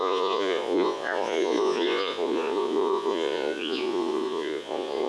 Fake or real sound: fake